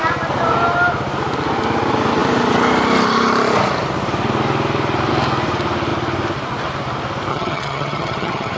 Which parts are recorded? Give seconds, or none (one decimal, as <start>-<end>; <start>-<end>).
0.0-7.3